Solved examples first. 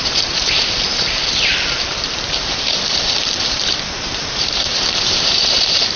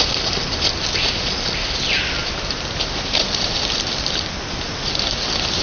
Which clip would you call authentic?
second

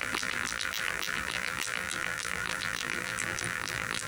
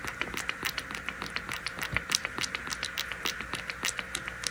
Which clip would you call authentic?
second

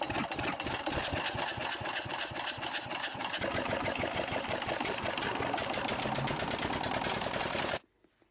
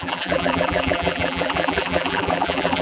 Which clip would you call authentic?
first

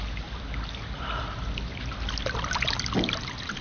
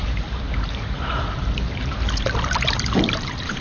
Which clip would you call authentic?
first